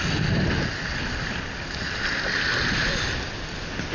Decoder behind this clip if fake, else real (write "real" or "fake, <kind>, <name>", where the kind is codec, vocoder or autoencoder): real